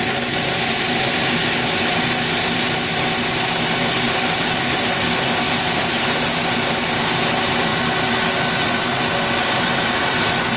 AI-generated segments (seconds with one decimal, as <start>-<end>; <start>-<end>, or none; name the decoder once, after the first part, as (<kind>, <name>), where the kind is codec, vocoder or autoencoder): none